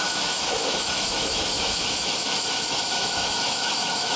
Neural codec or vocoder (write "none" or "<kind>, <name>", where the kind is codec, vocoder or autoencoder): autoencoder, DAC-VAE